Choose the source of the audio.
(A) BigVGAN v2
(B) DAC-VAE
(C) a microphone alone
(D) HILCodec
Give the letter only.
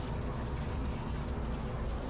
C